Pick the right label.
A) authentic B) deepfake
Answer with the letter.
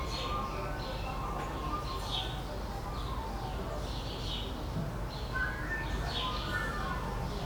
A